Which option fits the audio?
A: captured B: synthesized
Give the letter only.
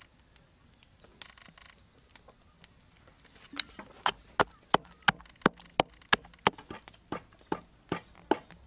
A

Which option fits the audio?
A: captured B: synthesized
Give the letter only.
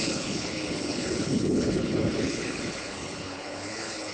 B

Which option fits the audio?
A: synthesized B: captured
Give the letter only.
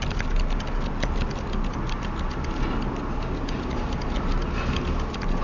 B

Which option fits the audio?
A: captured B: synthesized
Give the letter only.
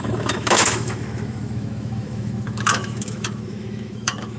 B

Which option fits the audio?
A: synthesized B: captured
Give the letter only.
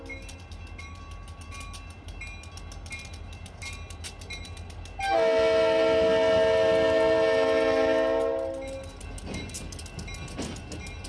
B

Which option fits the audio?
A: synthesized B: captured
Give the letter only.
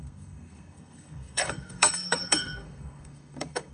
A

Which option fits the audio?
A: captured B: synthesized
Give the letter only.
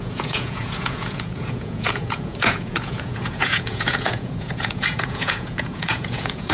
B